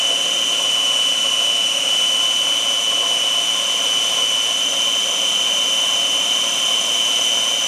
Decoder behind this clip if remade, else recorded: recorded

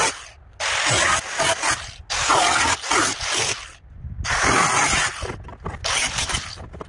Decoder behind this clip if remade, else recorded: recorded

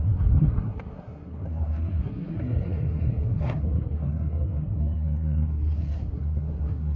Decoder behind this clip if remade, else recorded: remade, codec, SNAC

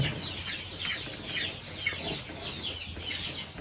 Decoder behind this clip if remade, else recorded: recorded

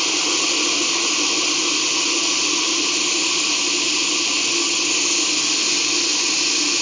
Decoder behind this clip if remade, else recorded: recorded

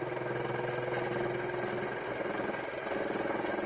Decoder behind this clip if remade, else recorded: recorded